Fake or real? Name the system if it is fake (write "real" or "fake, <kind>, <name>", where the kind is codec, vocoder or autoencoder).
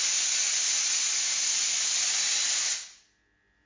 real